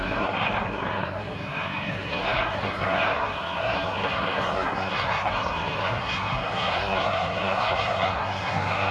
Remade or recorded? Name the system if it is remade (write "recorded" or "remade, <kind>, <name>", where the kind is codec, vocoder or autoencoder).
remade, codec, SNAC